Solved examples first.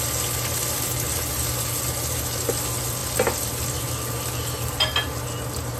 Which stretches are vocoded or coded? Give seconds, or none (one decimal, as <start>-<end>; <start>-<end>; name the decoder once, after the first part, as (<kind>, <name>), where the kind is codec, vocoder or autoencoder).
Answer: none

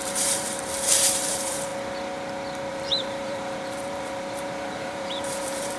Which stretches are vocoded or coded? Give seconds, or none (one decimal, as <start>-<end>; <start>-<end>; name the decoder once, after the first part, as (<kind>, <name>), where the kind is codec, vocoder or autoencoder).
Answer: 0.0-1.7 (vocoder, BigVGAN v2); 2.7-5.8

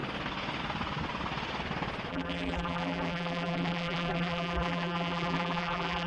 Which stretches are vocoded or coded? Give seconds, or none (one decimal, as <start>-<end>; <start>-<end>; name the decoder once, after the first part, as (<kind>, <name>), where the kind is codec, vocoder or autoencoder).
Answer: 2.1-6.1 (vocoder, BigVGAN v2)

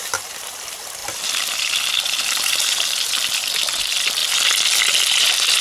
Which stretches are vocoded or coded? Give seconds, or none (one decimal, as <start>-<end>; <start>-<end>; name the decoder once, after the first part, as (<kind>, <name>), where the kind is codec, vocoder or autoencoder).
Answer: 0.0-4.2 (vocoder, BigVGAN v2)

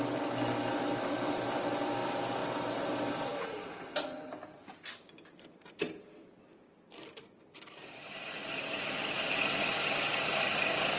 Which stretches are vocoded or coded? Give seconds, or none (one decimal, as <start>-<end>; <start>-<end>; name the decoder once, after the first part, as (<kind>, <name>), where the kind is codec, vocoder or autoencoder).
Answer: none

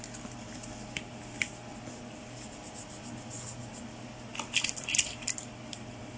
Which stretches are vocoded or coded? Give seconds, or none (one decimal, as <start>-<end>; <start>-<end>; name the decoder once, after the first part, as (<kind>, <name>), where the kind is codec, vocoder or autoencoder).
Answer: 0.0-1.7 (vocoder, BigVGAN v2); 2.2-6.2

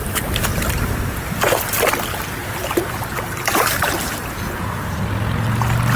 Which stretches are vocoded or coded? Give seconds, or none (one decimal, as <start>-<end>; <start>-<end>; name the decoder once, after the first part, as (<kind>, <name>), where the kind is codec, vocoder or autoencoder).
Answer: 0.5-1.5 (vocoder, BigVGAN v2); 2.4-4.5